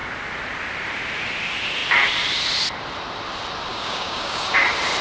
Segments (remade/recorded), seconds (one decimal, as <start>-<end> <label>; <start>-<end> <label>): 0.0-3.7 recorded; 3.7-4.6 remade; 4.6-5.0 recorded